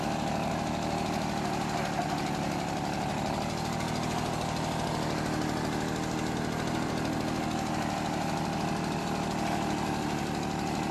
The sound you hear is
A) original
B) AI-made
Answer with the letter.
A